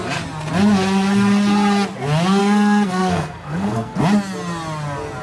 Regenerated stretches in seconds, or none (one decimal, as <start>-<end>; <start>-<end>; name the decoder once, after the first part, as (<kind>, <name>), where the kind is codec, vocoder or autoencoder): 2.4-4.0 (codec, SNAC)